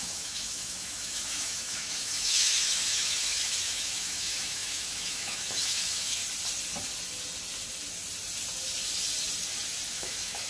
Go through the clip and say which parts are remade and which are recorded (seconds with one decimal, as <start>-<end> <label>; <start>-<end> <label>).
0.0-6.2 remade; 6.2-9.9 recorded; 9.9-10.5 remade